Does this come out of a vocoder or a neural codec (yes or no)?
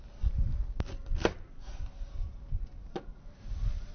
no